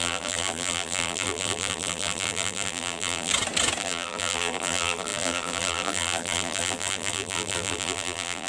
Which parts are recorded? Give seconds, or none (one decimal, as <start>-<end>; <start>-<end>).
3.3-3.8